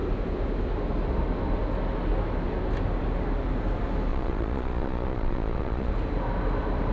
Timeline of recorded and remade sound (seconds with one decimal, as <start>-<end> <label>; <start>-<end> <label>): 0.0-4.1 recorded; 4.1-5.9 remade; 5.9-6.9 recorded